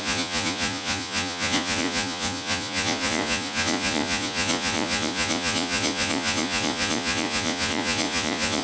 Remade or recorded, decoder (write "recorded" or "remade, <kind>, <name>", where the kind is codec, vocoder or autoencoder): remade, vocoder, Vocos